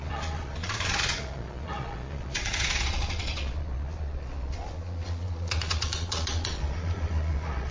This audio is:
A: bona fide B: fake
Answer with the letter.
B